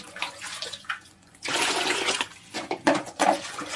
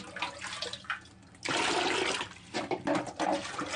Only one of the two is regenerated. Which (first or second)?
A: first